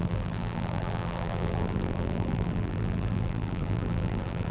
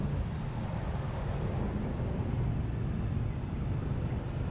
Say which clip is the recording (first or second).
second